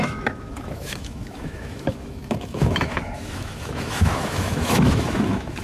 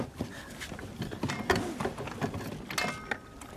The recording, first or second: second